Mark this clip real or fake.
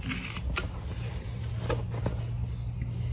real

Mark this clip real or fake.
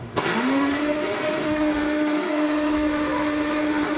fake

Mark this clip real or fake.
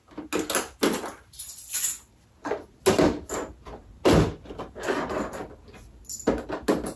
real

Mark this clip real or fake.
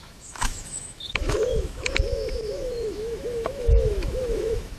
fake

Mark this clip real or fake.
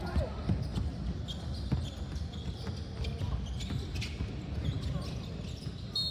real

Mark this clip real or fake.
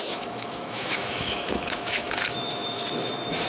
fake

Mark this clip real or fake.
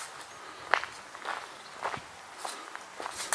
real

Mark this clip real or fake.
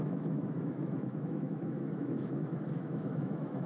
fake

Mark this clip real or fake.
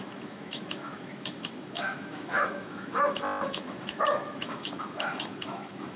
fake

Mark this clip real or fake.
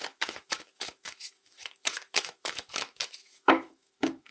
fake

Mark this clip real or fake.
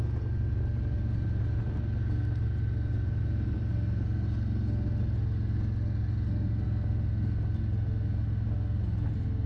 real